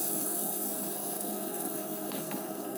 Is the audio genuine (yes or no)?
no